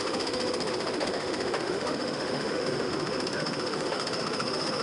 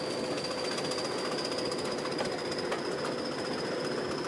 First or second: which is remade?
first